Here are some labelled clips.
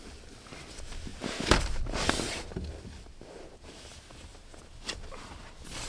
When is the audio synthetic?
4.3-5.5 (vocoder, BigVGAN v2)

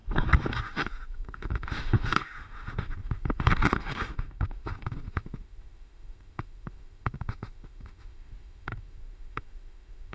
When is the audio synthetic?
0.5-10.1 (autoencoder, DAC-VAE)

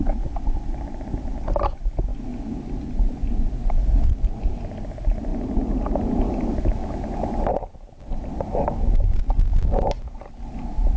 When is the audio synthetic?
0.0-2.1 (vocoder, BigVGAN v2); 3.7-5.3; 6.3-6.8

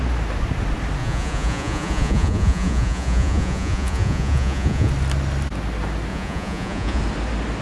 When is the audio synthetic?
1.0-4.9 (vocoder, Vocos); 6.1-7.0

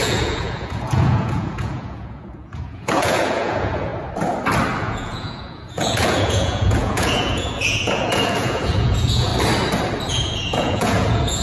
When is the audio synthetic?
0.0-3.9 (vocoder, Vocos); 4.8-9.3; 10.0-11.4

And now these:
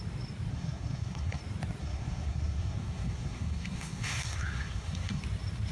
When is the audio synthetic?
0.5-1.4 (codec, SNAC); 1.8-5.2

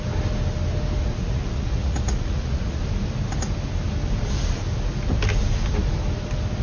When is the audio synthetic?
1.0-2.8 (vocoder, Vocos)